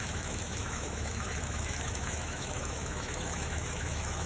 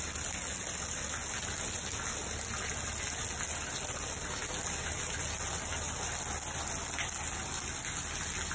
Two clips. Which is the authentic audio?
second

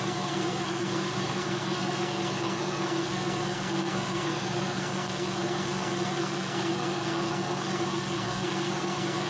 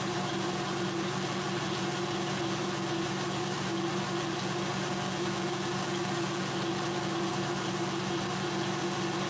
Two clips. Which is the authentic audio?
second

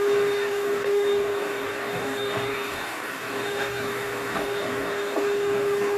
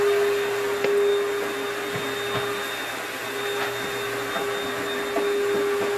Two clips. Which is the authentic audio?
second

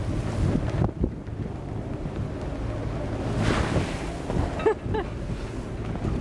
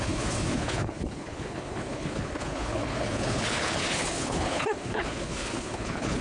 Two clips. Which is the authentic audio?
first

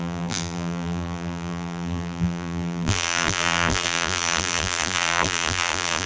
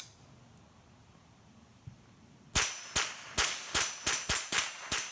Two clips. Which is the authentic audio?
second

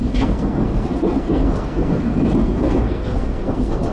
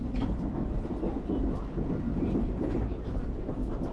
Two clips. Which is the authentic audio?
second